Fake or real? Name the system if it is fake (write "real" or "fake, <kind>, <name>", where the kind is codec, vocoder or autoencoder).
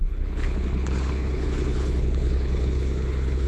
fake, codec, HILCodec